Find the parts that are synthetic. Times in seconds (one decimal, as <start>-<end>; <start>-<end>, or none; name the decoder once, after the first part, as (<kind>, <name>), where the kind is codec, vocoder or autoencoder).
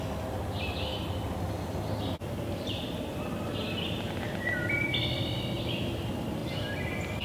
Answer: none